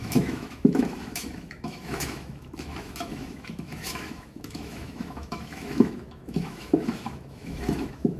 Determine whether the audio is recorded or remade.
remade